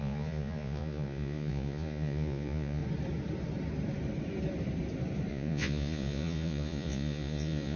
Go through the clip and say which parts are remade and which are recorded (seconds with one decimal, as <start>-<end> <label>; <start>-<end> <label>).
0.0-2.8 remade; 2.8-5.3 recorded; 5.3-7.8 remade